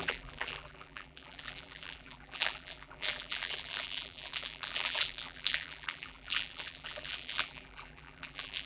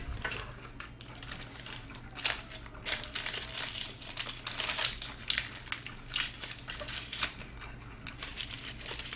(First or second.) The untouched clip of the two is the second